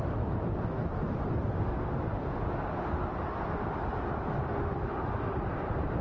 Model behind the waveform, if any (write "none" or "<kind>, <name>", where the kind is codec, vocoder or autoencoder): none